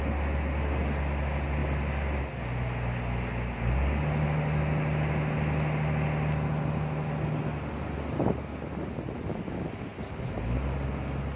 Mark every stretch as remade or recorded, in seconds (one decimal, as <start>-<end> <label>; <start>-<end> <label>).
0.0-11.4 recorded